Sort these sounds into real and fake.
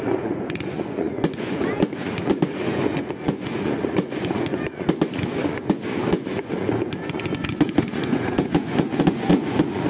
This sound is fake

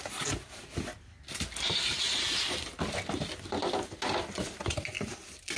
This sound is real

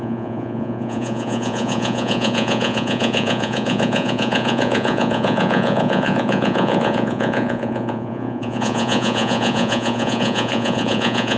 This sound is fake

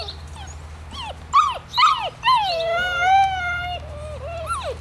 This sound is real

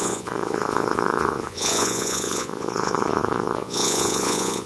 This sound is fake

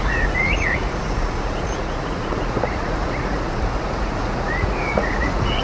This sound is fake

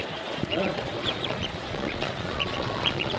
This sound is fake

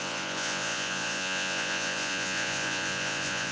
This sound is fake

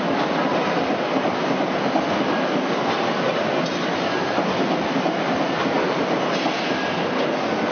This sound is real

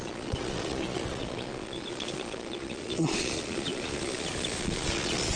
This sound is fake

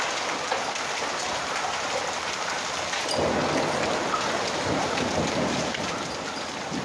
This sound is real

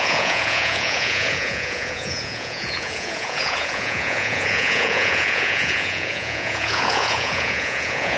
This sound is fake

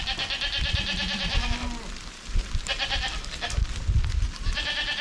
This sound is real